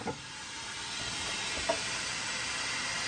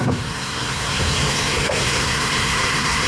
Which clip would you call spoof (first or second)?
second